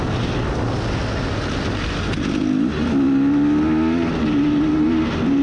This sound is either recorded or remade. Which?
recorded